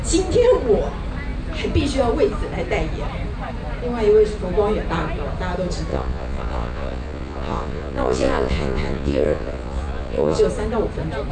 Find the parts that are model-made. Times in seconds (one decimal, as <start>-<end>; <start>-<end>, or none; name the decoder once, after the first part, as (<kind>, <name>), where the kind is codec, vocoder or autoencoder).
5.9-10.4 (vocoder, Vocos)